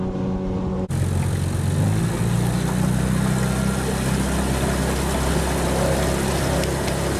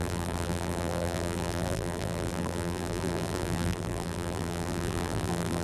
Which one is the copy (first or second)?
second